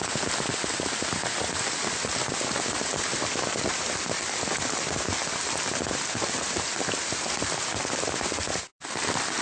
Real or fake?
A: fake